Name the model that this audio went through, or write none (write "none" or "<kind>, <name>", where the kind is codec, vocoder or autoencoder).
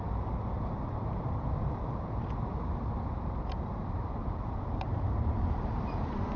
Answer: vocoder, BigVGAN v2